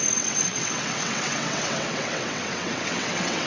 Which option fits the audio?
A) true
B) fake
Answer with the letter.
B